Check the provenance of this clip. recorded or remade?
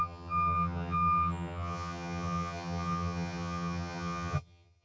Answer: remade